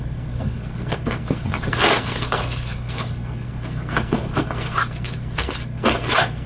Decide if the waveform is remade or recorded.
remade